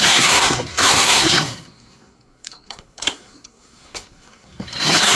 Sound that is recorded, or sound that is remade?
remade